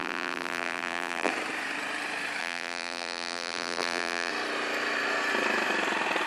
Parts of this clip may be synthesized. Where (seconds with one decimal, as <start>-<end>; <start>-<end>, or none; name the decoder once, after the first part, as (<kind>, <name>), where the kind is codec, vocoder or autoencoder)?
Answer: 0.0-1.3 (vocoder, BigVGAN v2); 2.4-4.3